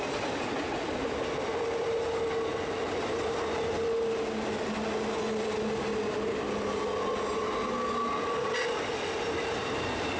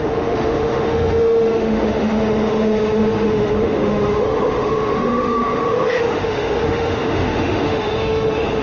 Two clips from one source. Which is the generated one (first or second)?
second